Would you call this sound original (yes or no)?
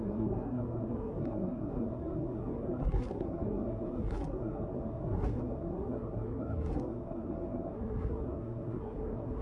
no